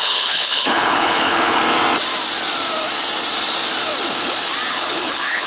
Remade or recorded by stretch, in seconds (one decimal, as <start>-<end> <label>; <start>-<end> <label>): 0.0-1.6 remade; 1.6-4.7 recorded; 4.7-5.5 remade